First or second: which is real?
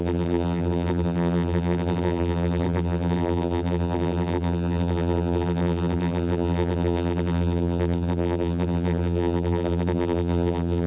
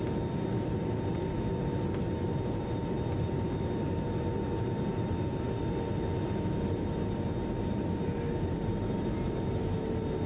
second